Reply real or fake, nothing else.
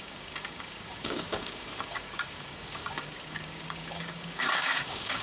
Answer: fake